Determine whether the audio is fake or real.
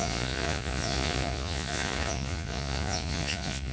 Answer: fake